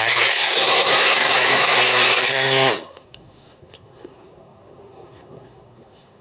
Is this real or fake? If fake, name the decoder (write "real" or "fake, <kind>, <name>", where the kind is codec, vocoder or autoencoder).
fake, codec, SNAC